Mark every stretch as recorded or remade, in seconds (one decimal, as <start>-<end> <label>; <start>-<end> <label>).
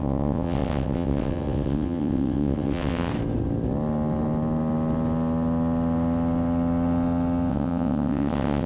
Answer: 0.0-3.1 remade; 3.1-7.5 recorded; 7.5-8.7 remade